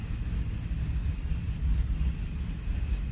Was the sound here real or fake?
real